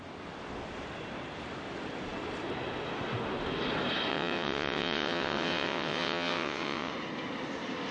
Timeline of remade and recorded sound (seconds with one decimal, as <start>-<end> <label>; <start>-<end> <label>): 0.0-4.1 recorded; 4.1-6.9 remade; 6.9-7.9 recorded